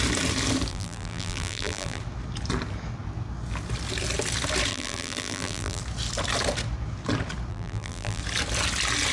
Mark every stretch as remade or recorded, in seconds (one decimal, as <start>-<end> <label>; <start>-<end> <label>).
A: 0.0-0.7 recorded; 0.7-2.0 remade; 2.0-4.7 recorded; 4.7-5.8 remade; 5.8-7.5 recorded; 7.5-8.2 remade; 8.2-9.1 recorded